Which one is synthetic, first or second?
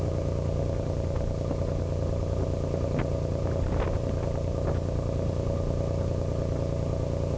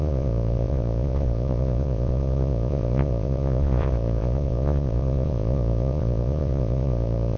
second